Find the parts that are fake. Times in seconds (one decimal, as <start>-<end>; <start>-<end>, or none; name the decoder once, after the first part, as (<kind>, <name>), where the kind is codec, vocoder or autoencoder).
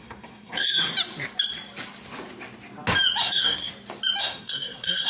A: 0.0-0.9 (codec, SNAC); 3.2-3.7; 4.2-5.1